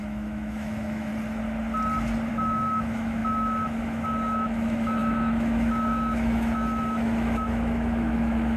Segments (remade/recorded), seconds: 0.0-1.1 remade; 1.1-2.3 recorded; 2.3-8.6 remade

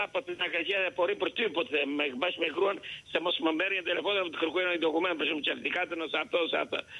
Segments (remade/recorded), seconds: 0.0-0.6 remade; 0.6-1.8 recorded; 1.8-3.3 remade; 3.3-5.9 recorded; 5.9-7.0 remade

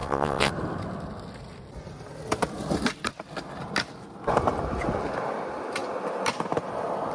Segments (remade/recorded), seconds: 0.0-0.5 remade; 0.5-7.1 recorded

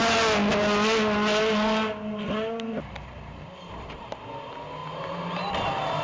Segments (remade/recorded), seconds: 0.0-3.6 recorded; 3.6-6.0 remade

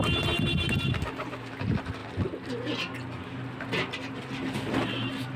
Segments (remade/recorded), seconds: 0.0-5.4 recorded